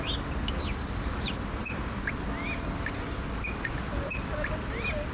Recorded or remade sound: recorded